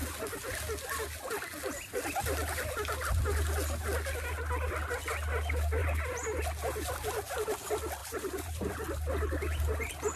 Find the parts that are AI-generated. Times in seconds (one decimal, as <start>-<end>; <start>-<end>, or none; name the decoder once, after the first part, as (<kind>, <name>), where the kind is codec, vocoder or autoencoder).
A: 5.8-6.4 (vocoder, BigVGAN v2); 8.0-8.7